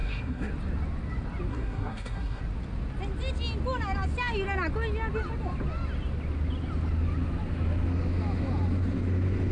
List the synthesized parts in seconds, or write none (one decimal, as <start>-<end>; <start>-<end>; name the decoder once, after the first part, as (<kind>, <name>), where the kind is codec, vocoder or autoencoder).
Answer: 0.0-0.5 (codec, SNAC); 1.5-2.4